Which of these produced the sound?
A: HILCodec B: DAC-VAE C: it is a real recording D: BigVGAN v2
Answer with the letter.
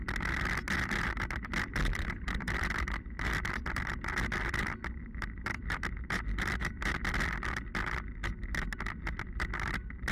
C